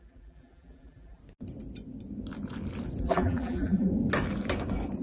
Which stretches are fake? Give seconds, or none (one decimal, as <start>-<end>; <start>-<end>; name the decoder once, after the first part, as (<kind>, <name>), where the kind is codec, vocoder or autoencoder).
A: 0.0-1.2 (vocoder, BigVGAN v2); 3.0-3.9